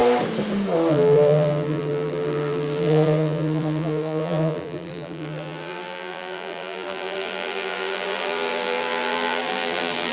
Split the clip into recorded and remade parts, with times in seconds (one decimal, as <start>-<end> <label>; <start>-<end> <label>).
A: 0.0-0.9 recorded; 0.9-10.1 remade